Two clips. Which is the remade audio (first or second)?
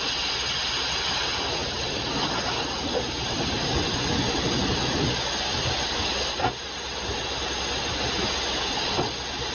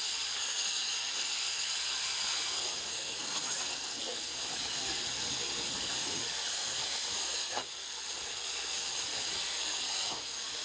second